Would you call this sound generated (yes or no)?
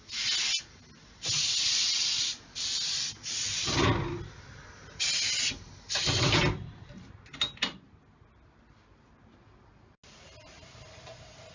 no